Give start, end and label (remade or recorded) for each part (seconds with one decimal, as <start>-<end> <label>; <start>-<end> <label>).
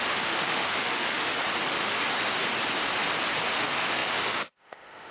0.0-1.3 remade; 1.3-3.6 recorded; 3.6-5.1 remade